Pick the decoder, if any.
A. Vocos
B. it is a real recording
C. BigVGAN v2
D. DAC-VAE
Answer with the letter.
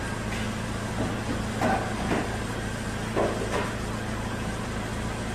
B